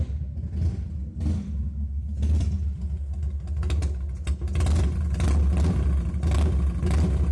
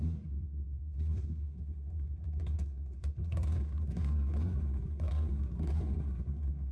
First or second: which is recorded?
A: first